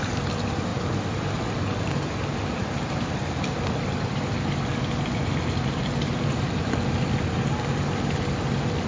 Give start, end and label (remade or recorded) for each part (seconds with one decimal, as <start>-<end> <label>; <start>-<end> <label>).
0.0-8.9 recorded